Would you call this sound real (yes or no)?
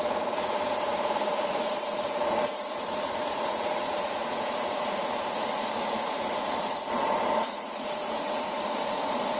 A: no